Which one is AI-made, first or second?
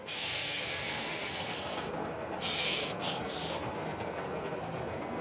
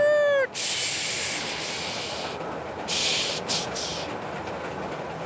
first